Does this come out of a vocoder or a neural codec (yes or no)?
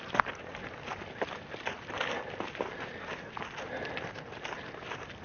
no